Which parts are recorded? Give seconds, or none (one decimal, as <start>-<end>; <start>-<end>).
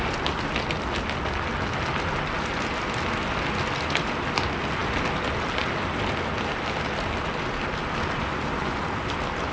0.0-9.5